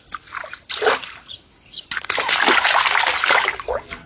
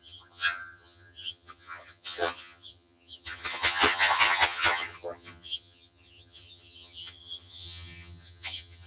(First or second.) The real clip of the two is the first